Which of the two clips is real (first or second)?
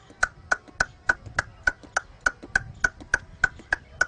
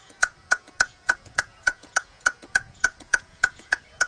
first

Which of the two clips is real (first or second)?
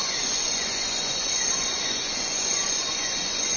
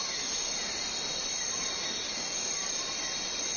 second